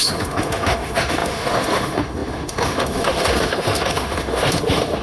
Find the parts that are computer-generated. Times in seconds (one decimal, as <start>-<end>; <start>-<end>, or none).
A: 0.0-5.0